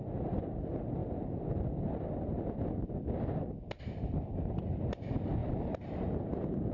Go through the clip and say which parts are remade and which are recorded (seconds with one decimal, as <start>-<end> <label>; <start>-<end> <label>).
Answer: 0.0-5.4 recorded; 5.4-6.0 remade; 6.0-6.7 recorded